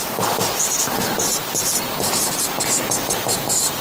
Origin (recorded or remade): recorded